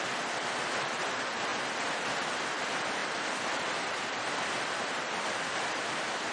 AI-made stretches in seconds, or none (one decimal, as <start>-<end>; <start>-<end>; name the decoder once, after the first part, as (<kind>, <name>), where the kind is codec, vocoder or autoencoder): 0.0-1.5 (vocoder, BigVGAN v2); 2.3-6.3

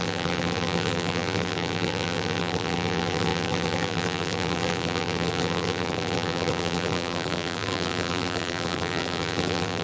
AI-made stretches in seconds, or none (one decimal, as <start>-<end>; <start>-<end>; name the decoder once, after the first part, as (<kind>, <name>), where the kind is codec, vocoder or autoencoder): 0.0-9.8 (vocoder, BigVGAN v2)

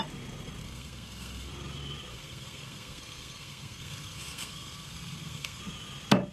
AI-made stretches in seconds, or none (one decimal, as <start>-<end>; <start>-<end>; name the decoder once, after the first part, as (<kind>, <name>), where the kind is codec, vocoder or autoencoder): 0.6-1.5 (codec, SNAC); 2.1-5.6

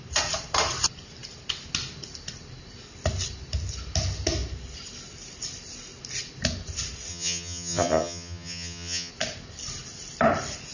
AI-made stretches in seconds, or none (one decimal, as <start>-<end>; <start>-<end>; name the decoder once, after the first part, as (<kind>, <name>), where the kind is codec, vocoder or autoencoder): 7.1-9.1 (vocoder, HiFi-GAN)